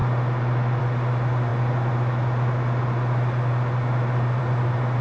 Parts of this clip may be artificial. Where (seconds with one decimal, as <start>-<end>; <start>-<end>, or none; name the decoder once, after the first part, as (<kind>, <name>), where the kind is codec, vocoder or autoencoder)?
none